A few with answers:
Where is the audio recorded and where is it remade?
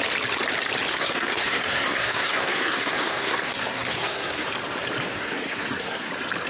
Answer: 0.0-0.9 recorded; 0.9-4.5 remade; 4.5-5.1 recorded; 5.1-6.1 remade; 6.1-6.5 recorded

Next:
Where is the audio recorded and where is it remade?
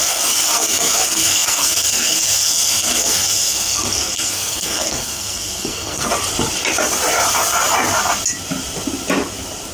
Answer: 0.0-6.1 remade; 6.1-9.7 recorded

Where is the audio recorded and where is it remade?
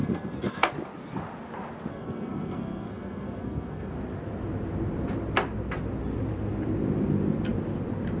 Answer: 0.0-0.7 remade; 0.7-1.9 recorded; 1.9-3.9 remade; 3.9-8.2 recorded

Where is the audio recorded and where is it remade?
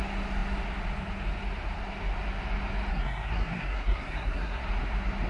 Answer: 0.0-2.9 recorded; 2.9-4.6 remade; 4.6-5.3 recorded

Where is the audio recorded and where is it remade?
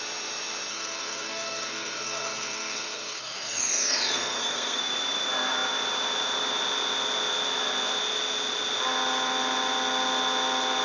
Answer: 0.0-0.7 recorded; 0.7-4.8 remade; 4.8-10.8 recorded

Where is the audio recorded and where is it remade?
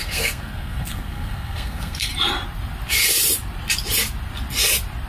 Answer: 0.0-2.1 remade; 2.1-5.1 recorded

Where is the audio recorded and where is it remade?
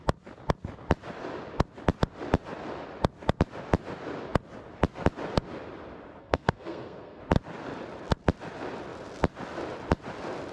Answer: 0.0-6.2 recorded; 6.2-7.2 remade; 7.2-10.5 recorded